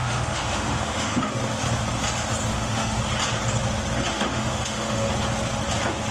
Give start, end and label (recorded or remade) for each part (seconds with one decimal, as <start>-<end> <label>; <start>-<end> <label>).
0.0-1.3 remade; 1.3-2.5 recorded; 2.5-3.0 remade; 3.0-4.1 recorded; 4.1-5.1 remade; 5.1-6.1 recorded